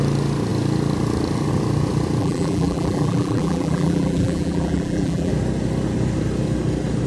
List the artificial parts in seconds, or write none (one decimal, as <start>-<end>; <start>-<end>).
2.2-5.3